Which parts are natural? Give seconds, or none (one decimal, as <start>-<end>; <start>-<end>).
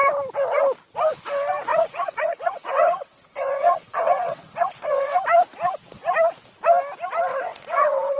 0.0-1.7; 5.1-7.3